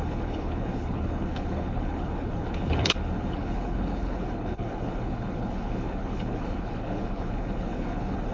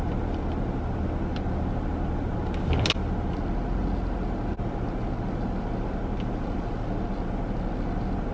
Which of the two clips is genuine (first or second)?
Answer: second